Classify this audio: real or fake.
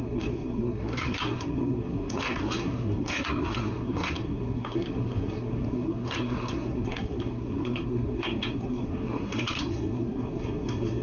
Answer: fake